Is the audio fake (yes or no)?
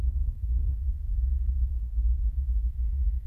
yes